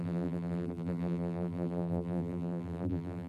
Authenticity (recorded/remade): remade